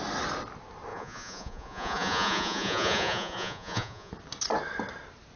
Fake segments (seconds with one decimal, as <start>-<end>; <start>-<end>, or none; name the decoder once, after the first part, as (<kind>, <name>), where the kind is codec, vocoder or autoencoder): 0.9-4.1 (vocoder, Vocos)